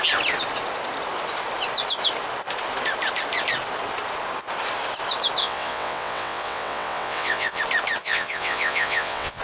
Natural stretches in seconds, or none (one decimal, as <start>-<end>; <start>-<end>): 0.0-5.4; 7.6-8.0